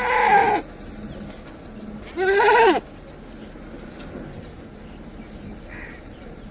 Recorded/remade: recorded